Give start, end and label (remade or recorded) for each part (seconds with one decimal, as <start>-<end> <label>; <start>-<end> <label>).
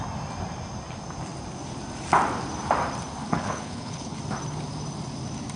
0.0-3.2 recorded; 3.2-4.2 remade; 4.2-5.6 recorded